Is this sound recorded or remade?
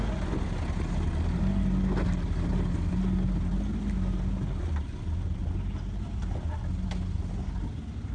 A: recorded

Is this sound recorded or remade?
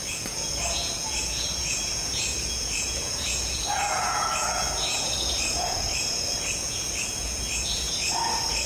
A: remade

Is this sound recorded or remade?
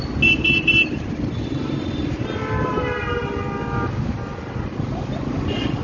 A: recorded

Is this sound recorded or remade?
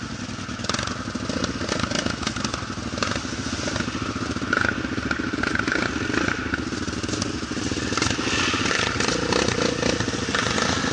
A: recorded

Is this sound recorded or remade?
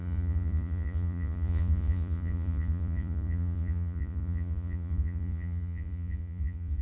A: remade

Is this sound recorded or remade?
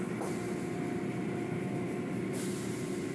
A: recorded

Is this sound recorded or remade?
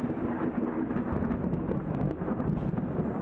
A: recorded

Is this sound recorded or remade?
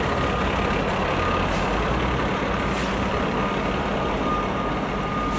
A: recorded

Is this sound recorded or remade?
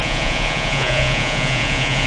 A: remade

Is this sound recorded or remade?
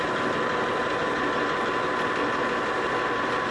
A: recorded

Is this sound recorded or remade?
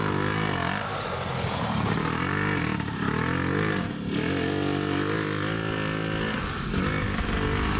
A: recorded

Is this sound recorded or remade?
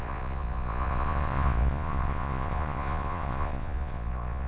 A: remade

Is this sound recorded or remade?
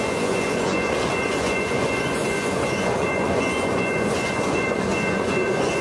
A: remade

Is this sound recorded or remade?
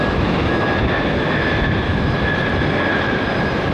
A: recorded